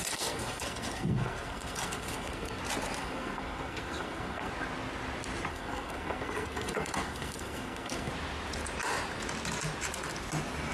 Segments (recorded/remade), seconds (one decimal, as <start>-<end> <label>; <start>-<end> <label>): 0.0-2.6 remade; 2.6-3.0 recorded; 3.0-4.5 remade; 4.5-5.5 recorded; 5.5-8.1 remade; 8.1-10.7 recorded